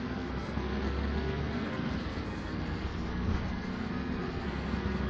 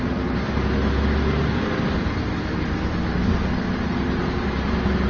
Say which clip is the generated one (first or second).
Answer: first